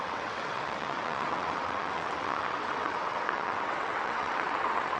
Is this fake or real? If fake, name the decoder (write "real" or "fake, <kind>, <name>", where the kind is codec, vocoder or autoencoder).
fake, vocoder, WaveNeXt